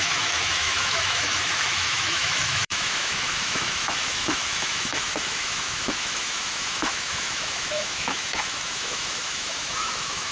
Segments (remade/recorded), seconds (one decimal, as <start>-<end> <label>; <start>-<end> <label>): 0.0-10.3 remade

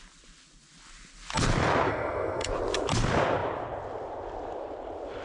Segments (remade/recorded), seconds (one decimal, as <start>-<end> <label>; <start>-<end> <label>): 0.0-1.9 recorded; 1.9-2.5 remade; 2.5-5.2 recorded

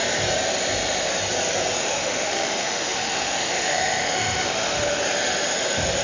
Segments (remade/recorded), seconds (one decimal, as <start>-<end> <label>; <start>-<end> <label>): 0.0-1.8 recorded; 1.8-5.0 remade; 5.0-6.0 recorded

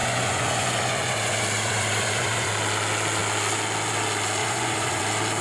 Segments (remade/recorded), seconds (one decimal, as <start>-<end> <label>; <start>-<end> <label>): 0.0-2.5 remade; 2.5-4.4 recorded; 4.4-5.0 remade; 5.0-5.4 recorded

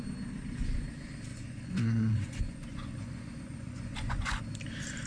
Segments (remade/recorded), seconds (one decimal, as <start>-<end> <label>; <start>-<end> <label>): 0.0-1.3 recorded; 1.3-4.4 remade; 4.4-5.1 recorded

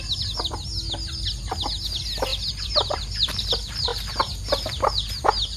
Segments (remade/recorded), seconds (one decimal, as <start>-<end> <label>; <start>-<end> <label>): 0.0-2.3 recorded; 2.3-3.4 remade; 3.4-5.6 recorded

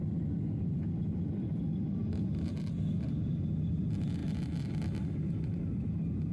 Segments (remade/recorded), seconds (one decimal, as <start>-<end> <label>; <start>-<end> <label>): 0.0-2.0 recorded; 2.0-2.5 remade; 2.5-6.3 recorded

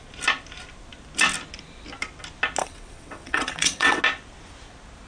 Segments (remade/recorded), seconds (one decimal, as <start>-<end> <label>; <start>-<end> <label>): 0.0-2.6 recorded; 2.6-4.0 remade; 4.0-5.1 recorded